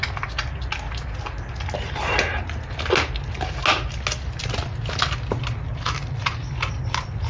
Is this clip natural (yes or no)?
yes